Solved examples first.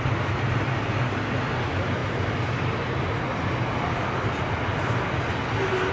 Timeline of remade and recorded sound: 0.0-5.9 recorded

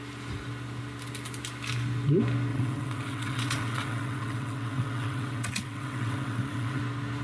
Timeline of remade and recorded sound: 0.0-2.5 recorded; 2.5-6.8 remade; 6.8-7.2 recorded